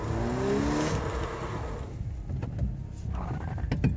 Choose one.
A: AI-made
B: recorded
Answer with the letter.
B